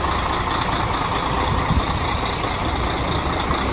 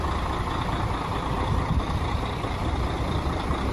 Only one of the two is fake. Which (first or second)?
second